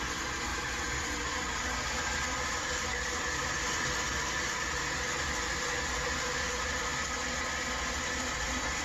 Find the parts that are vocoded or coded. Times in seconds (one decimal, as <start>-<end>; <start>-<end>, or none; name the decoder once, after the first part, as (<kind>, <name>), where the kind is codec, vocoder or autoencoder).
none